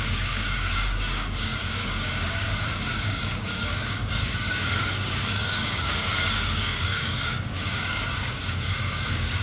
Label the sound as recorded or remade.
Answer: remade